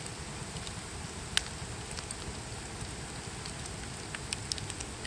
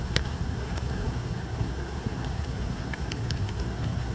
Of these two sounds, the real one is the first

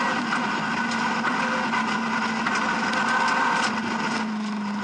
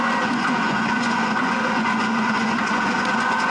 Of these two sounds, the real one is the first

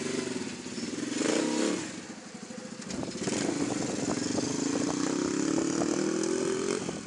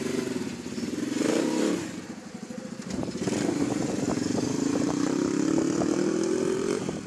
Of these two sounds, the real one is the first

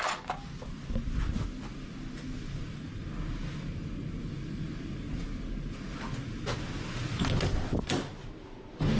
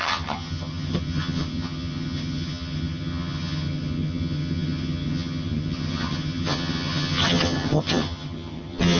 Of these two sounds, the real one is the first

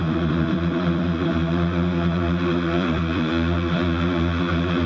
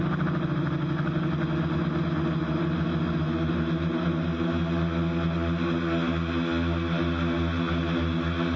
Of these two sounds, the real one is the second